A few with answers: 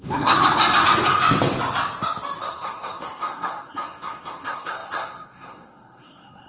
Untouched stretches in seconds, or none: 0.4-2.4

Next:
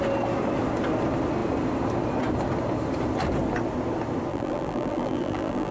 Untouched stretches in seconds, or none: 0.0-4.3

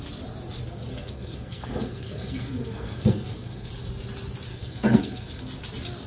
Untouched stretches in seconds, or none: 0.0-0.9; 3.7-4.5; 5.4-6.1

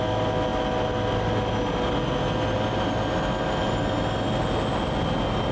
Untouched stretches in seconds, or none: 0.0-5.5

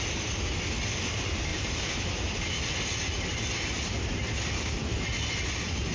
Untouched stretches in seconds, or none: 0.0-1.5; 2.7-5.9

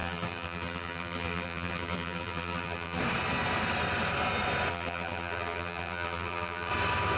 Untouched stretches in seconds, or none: 3.0-4.7; 6.7-7.2

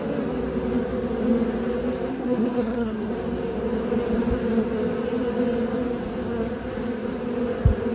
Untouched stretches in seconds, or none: 0.0-2.1; 3.1-7.9